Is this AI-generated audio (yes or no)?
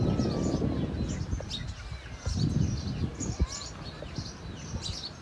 no